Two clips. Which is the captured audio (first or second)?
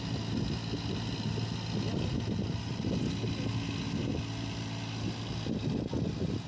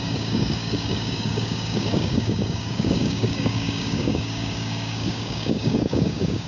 first